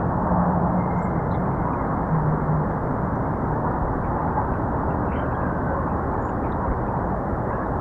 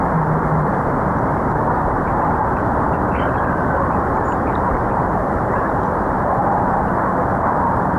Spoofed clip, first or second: second